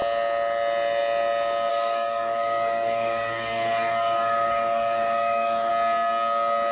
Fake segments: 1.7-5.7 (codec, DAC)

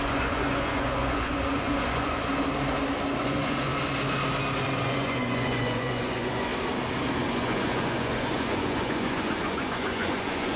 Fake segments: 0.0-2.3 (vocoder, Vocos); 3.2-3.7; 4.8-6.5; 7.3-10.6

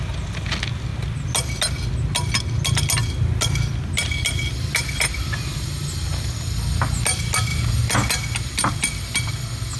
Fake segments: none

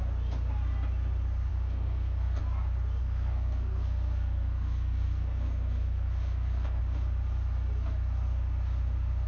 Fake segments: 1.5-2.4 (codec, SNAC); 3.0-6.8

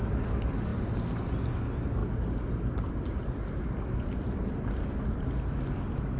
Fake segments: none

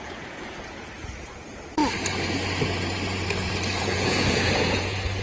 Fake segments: 0.0-1.8 (vocoder, Vocos); 3.8-5.2

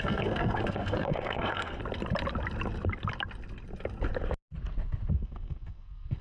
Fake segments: 0.0-1.8 (codec, SNAC); 5.1-6.2

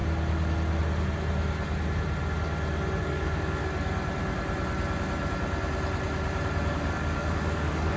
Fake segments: 3.0-3.6 (codec, DAC); 6.7-8.0